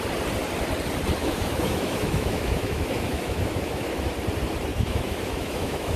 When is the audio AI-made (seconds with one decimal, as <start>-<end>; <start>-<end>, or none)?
1.2-4.1; 4.7-6.0